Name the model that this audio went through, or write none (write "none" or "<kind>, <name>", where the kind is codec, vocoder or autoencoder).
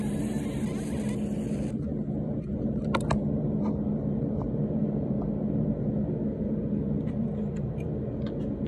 none